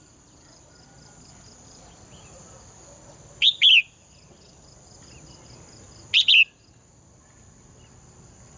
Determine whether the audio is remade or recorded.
recorded